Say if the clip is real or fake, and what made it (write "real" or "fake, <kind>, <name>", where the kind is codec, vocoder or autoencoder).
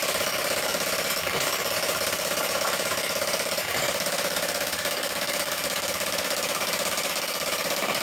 fake, codec, DAC